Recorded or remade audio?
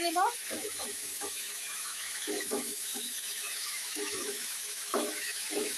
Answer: remade